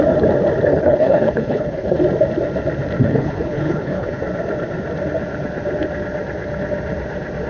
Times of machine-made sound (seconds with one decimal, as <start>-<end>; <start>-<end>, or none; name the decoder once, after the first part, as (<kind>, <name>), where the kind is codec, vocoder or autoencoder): 0.7-2.0 (codec, HILCodec); 3.0-4.2

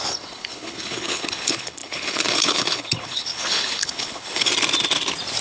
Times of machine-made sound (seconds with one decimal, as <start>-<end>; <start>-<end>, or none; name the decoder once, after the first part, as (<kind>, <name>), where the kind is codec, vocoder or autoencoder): 0.0-4.5 (codec, HILCodec)

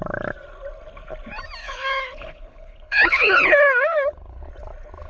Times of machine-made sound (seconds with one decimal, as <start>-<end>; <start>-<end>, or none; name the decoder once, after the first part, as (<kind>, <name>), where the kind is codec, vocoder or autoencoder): 1.6-4.5 (codec, HILCodec)

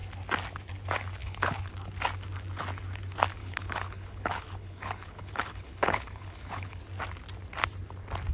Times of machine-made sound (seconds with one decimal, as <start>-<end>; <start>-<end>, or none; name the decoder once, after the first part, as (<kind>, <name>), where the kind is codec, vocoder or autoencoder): 1.2-1.7 (codec, HILCodec); 3.4-6.8

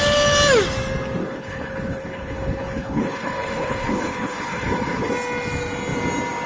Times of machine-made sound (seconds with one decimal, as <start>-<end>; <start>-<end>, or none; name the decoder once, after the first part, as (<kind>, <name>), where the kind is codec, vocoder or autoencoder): 1.2-5.1 (codec, HILCodec)

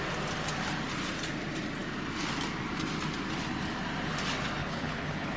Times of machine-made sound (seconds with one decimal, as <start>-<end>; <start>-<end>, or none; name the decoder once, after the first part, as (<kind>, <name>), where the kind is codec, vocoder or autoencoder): 4.6-5.4 (codec, HILCodec)

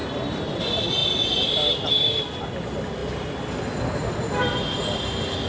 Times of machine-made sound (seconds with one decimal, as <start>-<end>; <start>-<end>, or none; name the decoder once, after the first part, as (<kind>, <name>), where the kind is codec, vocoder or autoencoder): none

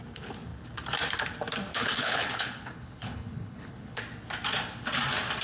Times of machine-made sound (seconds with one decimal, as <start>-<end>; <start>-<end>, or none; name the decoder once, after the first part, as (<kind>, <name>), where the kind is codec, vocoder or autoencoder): 1.7-4.0 (codec, HILCodec)